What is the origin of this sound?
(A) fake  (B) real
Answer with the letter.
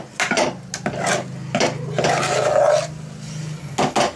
B